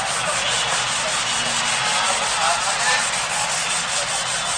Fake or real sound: real